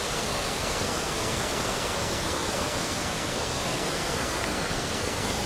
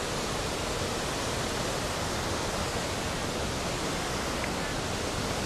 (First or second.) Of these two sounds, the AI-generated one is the first